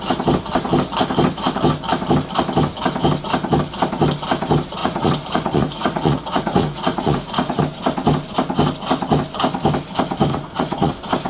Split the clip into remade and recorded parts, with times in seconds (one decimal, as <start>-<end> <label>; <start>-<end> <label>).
0.0-4.8 recorded; 4.8-7.6 remade; 7.6-10.3 recorded; 10.3-10.9 remade; 10.9-11.3 recorded